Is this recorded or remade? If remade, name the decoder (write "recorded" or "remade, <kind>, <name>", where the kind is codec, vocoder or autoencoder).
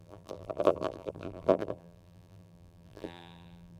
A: remade, vocoder, BigVGAN v2